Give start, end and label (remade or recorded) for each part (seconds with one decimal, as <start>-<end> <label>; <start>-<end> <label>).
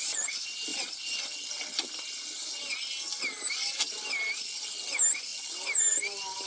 0.0-6.5 recorded